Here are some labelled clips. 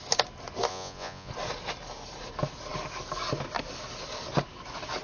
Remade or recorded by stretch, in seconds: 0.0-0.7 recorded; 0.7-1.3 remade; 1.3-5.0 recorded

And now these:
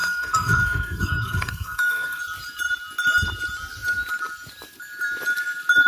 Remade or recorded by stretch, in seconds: 0.0-2.2 remade; 2.2-5.9 recorded

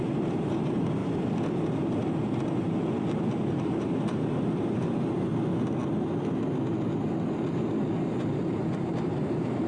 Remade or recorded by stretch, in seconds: 0.0-1.0 remade; 1.0-3.1 recorded; 3.1-5.3 remade; 5.3-8.7 recorded; 8.7-9.7 remade

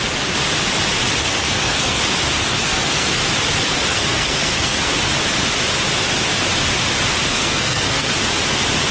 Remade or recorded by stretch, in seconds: 0.0-1.2 recorded; 1.2-2.0 remade; 2.0-2.4 recorded; 2.4-3.2 remade; 3.2-3.9 recorded; 3.9-4.9 remade; 4.9-7.3 recorded; 7.3-8.1 remade; 8.1-8.9 recorded

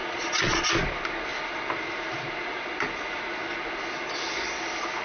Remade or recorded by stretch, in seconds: 0.0-0.7 remade; 0.7-5.0 recorded

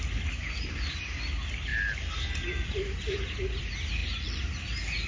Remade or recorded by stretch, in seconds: 0.0-5.1 recorded

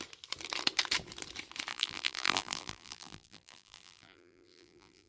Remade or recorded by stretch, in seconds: 0.0-1.7 recorded; 1.7-5.1 remade

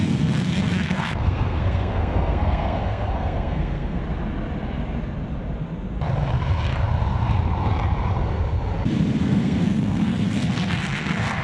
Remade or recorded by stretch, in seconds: 0.0-4.0 remade; 4.0-9.2 recorded; 9.2-11.4 remade